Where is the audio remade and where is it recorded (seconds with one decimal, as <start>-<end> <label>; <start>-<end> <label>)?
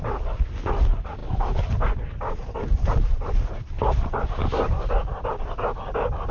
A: 0.0-6.3 recorded